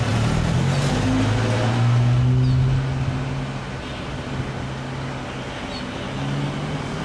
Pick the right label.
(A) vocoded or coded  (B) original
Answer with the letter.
B